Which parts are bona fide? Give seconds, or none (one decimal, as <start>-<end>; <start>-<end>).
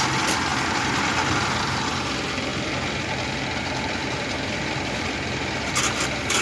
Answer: 0.0-6.4